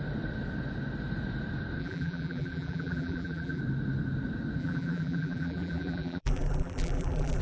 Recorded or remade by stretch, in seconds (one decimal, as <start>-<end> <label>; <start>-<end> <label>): 0.0-1.8 recorded; 1.8-3.6 remade; 3.6-4.6 recorded; 4.6-7.4 remade